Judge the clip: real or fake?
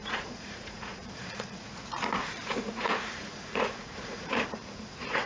fake